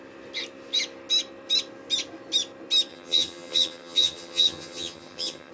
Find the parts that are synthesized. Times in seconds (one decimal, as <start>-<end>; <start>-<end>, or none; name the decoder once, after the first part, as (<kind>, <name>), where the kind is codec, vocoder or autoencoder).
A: 2.9-5.5 (vocoder, HiFi-GAN)